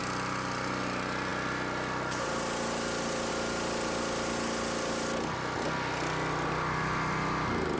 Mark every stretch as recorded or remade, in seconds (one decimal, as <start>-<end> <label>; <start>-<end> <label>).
0.0-7.8 recorded